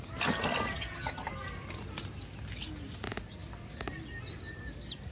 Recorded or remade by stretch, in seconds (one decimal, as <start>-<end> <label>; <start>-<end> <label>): 0.0-0.7 recorded; 0.7-1.3 remade; 1.3-5.1 recorded

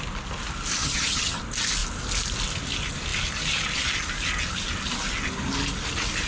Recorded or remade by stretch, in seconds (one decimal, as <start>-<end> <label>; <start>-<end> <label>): 0.0-0.8 recorded; 0.8-1.4 remade; 1.4-6.3 recorded

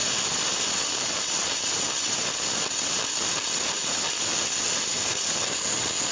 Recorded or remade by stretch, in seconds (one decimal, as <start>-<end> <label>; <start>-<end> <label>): 0.0-6.1 recorded

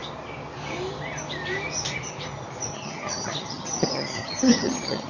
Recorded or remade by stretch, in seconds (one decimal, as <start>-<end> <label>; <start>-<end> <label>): 0.0-2.7 recorded; 2.7-5.1 remade

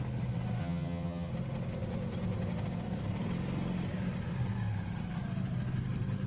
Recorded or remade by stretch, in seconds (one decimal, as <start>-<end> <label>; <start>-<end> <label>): 0.0-0.6 recorded; 0.6-1.3 remade; 1.3-6.3 recorded

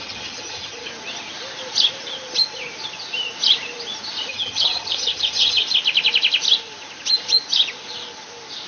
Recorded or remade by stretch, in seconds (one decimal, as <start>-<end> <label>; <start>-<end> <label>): 0.0-0.9 remade; 0.9-4.3 recorded; 4.3-5.6 remade; 5.6-8.7 recorded